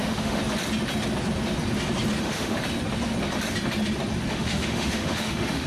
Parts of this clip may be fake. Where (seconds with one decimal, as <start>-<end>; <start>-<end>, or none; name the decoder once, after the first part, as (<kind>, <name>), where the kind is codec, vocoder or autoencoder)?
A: 0.0-0.4 (autoencoder, DAC-VAE); 2.2-2.6; 4.3-5.7